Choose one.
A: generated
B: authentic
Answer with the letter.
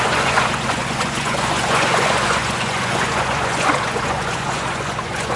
A